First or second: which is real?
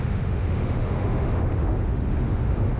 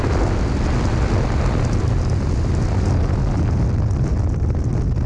second